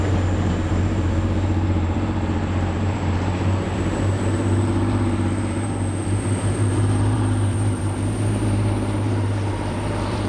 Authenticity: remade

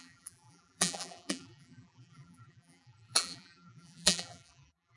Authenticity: remade